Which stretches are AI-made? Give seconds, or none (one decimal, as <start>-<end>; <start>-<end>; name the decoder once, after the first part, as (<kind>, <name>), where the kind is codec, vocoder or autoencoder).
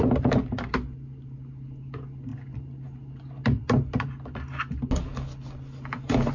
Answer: none